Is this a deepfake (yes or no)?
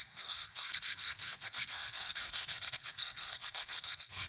yes